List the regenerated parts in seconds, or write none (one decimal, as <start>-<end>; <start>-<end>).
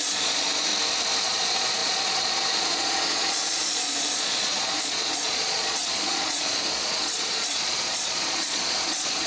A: 0.0-0.7; 1.2-9.3